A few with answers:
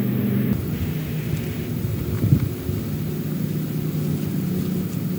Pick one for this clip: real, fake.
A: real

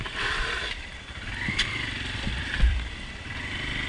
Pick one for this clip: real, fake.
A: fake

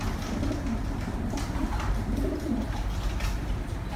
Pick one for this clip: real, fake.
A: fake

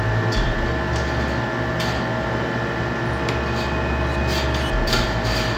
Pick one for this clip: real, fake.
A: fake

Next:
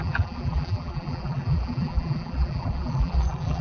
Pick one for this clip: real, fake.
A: fake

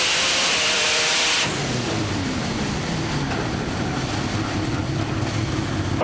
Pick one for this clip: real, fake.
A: fake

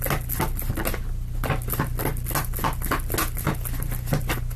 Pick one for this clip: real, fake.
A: real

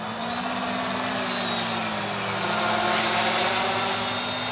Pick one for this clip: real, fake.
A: real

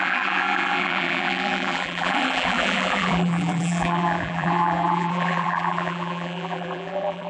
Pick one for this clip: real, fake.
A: fake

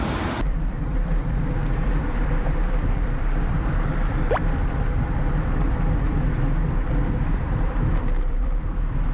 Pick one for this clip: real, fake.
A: fake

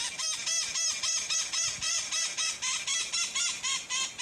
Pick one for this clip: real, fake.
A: fake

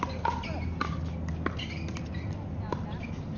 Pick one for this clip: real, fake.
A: real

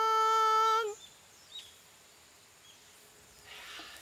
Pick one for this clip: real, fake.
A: real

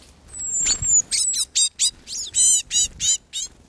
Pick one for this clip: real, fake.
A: real